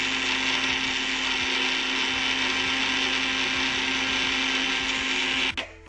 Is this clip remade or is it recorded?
recorded